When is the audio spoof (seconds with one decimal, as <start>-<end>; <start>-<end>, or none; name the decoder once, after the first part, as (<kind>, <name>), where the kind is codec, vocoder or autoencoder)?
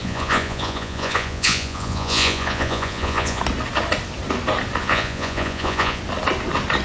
0.0-3.4 (vocoder, Vocos); 4.8-6.0